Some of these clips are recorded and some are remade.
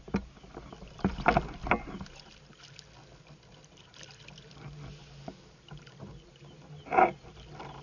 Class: recorded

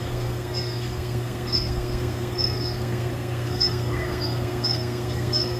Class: remade